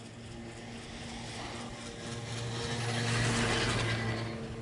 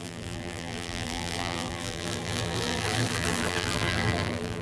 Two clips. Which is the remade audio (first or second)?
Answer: second